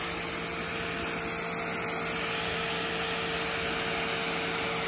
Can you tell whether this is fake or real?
real